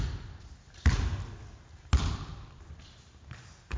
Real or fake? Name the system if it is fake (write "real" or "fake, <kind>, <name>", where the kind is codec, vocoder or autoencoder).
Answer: real